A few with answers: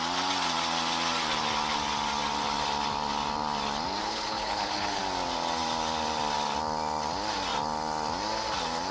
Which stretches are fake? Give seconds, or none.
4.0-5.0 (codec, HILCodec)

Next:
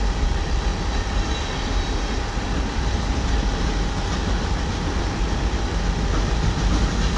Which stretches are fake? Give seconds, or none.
none

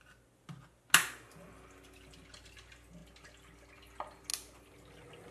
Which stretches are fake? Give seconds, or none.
none

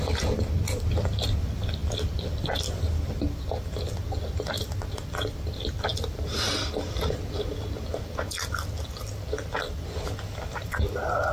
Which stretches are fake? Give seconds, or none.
none

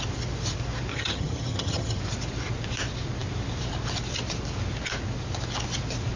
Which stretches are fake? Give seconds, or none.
0.9-2.0 (vocoder, HiFi-GAN)